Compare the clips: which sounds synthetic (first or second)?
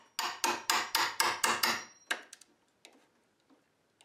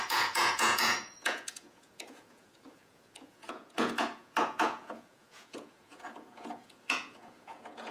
second